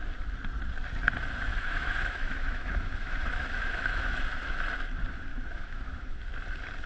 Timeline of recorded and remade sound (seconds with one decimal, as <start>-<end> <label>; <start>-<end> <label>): 0.0-1.5 recorded; 1.5-4.2 remade; 4.2-5.3 recorded; 5.3-6.2 remade; 6.2-6.9 recorded